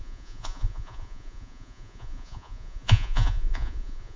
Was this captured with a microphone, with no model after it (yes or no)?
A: no